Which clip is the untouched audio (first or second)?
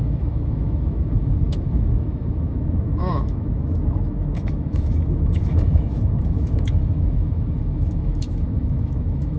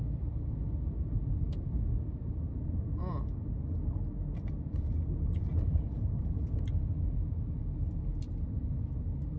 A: second